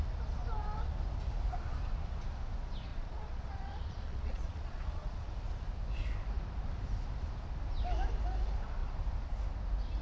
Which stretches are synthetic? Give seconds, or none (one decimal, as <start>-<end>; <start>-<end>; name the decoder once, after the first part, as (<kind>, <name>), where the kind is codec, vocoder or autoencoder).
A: 2.9-5.3 (vocoder, Vocos)